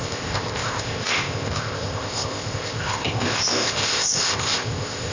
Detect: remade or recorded remade